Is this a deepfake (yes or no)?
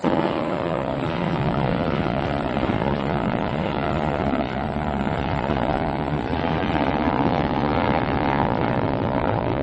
yes